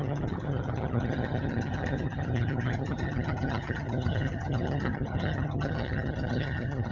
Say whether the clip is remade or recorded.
remade